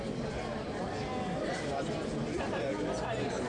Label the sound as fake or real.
real